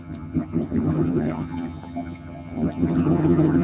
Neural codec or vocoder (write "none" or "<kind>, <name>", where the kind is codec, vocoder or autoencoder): vocoder, HiFi-GAN